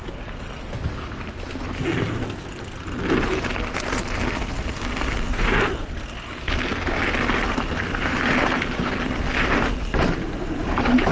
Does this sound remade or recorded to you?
recorded